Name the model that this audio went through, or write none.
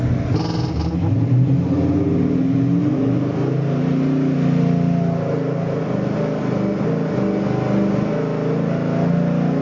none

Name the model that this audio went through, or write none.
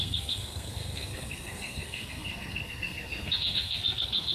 codec, SNAC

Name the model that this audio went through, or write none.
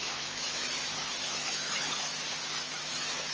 autoencoder, DAC-VAE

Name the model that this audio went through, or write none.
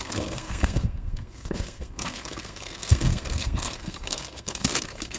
codec, SNAC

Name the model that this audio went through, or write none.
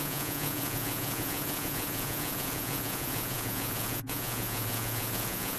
vocoder, Vocos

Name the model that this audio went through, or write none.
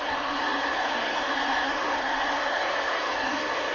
codec, SNAC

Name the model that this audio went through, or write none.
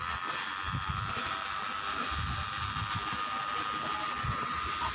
vocoder, BigVGAN v2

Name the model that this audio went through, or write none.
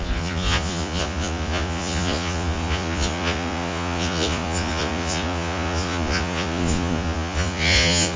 vocoder, Vocos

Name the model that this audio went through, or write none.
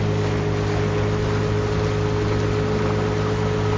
none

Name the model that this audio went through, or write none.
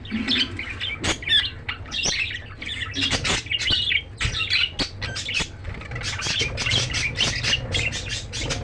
none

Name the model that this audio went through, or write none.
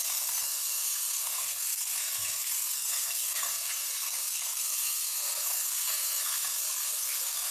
codec, SNAC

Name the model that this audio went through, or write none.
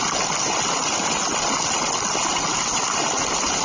none